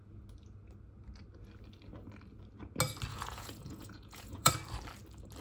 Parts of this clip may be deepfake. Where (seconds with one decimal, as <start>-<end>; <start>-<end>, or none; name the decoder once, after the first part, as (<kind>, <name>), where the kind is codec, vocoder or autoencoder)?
3.1-4.5 (vocoder, Vocos)